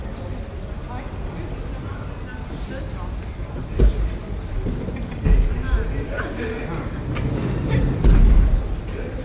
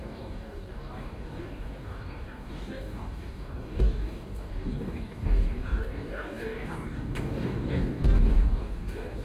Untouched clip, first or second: first